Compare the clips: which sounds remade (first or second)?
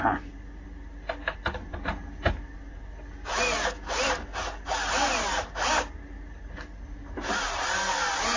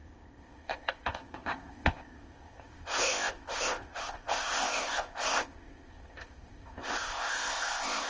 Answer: second